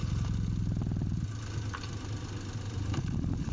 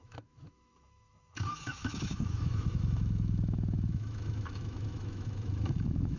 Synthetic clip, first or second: second